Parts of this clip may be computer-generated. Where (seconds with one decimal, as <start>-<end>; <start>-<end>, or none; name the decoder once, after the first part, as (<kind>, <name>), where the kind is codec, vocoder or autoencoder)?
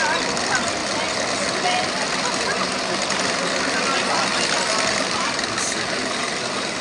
none